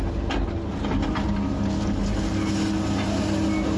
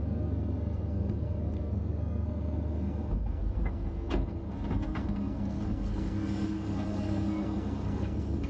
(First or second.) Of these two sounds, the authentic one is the first